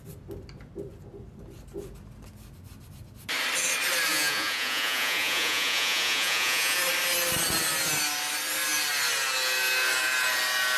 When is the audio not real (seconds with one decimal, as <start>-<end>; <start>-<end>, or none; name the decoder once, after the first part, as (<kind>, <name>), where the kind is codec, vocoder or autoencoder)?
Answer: 4.1-6.8 (vocoder, Vocos)